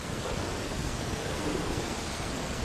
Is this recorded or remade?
remade